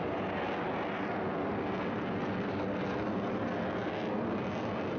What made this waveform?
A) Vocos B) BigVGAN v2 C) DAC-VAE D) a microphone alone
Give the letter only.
D